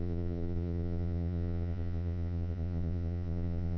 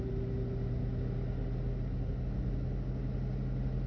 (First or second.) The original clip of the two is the second